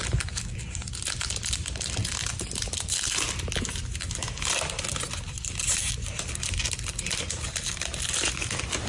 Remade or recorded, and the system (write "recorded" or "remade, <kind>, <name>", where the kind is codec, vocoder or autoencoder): recorded